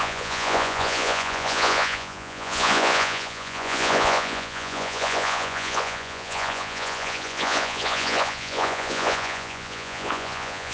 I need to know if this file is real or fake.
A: fake